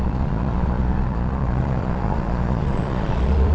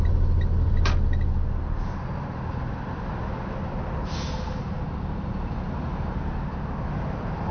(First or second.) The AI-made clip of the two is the first